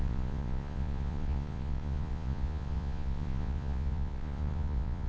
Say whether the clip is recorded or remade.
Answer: remade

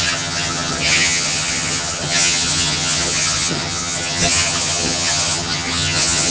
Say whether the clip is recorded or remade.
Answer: remade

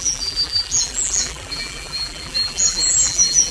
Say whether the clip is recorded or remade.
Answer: remade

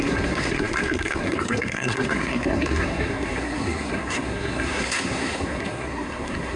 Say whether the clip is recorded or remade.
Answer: remade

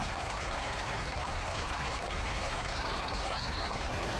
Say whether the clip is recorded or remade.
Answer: remade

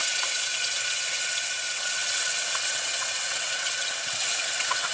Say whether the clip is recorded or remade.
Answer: remade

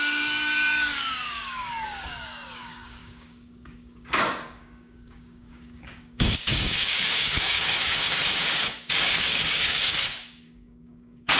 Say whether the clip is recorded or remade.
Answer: remade